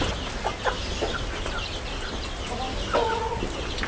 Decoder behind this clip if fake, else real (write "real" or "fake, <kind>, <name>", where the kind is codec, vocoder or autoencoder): real